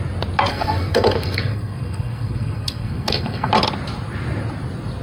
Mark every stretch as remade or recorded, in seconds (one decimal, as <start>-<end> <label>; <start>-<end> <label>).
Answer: 0.0-0.5 recorded; 0.5-3.5 remade; 3.5-5.0 recorded